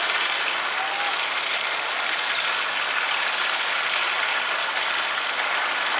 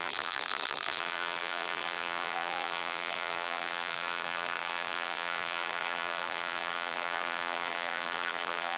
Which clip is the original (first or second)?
first